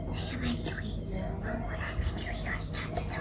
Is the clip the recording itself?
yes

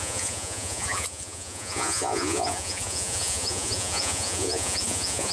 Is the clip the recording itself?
no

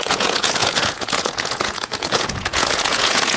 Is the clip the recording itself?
no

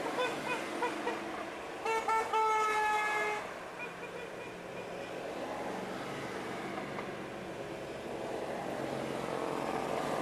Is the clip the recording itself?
yes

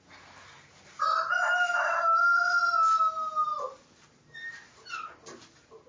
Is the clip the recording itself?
yes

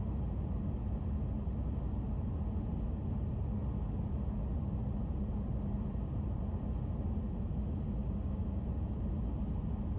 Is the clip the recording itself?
yes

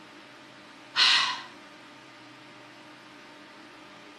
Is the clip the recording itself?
no